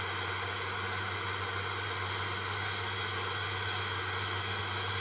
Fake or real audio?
real